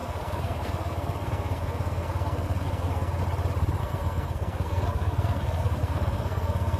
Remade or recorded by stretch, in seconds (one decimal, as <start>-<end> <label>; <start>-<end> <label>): 0.0-3.2 remade; 3.2-3.8 recorded; 3.8-6.8 remade